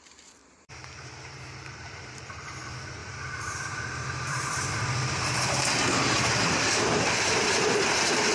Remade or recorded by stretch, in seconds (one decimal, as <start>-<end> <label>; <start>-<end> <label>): 0.0-8.3 remade

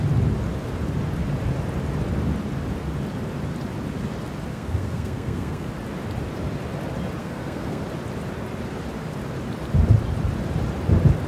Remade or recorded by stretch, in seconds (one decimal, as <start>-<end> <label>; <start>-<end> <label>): 0.0-4.5 recorded; 4.5-5.7 remade; 5.7-7.2 recorded; 7.2-7.8 remade; 7.8-11.3 recorded

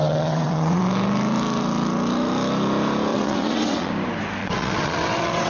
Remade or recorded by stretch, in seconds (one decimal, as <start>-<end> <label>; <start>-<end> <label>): 0.0-0.8 remade; 0.8-3.1 recorded; 3.1-3.9 remade; 3.9-4.4 recorded; 4.4-5.5 remade

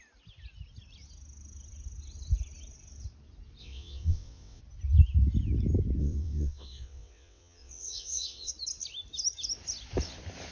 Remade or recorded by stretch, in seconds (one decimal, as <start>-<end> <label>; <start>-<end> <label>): 0.0-3.6 recorded; 3.6-4.6 remade; 4.6-6.0 recorded; 6.0-8.5 remade; 8.5-10.5 recorded

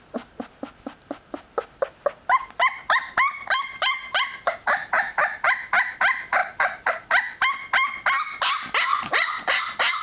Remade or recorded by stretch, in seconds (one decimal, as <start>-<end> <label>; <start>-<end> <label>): 0.0-8.9 recorded; 8.9-9.6 remade; 9.6-10.0 recorded

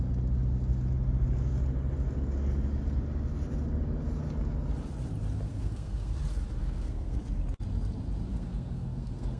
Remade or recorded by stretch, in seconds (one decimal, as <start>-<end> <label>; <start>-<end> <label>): 0.0-5.5 recorded; 5.5-6.1 remade; 6.1-6.6 recorded; 6.6-7.2 remade; 7.2-8.3 recorded; 8.3-9.4 remade

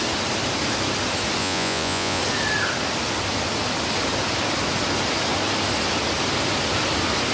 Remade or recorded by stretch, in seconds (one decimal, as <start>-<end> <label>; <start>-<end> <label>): 0.0-1.4 recorded; 1.4-2.2 remade; 2.2-7.3 recorded

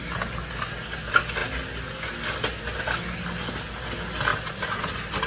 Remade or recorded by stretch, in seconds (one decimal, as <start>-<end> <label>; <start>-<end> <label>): 0.0-4.3 recorded; 4.3-5.3 remade